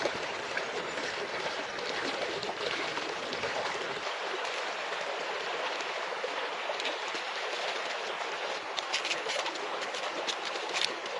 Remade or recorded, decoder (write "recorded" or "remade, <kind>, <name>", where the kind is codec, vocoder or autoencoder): recorded